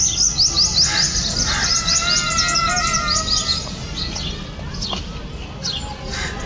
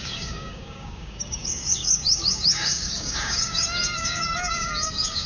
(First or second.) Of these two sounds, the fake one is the second